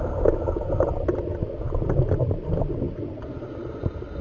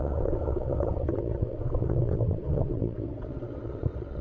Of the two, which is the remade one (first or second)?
second